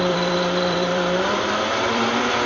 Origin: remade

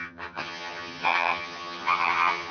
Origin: remade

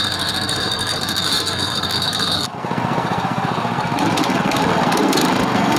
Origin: remade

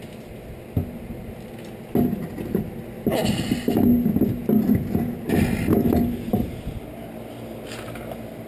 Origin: recorded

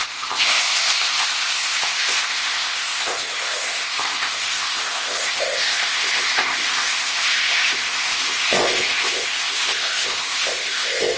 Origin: remade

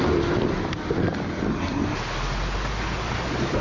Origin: recorded